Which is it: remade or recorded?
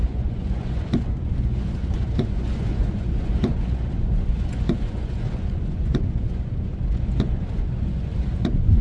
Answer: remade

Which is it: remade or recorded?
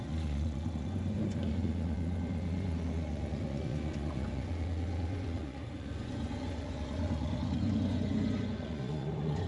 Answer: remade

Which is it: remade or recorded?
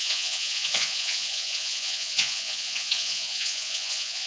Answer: remade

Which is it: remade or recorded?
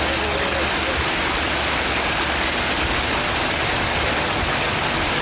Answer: recorded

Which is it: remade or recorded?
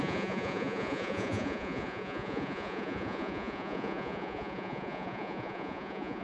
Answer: remade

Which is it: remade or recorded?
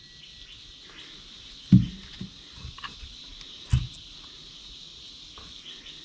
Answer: recorded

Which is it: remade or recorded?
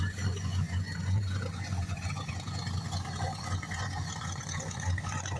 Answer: remade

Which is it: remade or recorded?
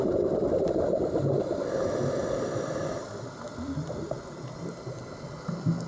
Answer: recorded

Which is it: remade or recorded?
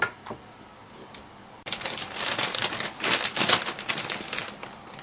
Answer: recorded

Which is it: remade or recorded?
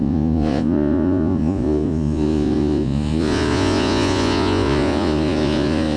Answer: remade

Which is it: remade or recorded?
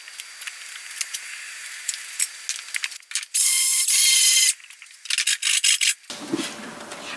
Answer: recorded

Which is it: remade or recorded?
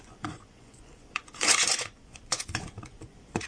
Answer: remade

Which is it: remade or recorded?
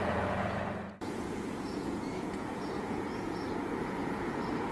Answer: remade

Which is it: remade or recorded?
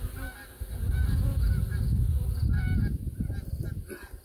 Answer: recorded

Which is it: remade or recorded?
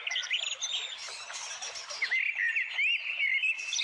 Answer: recorded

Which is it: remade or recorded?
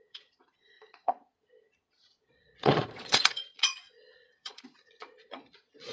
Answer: remade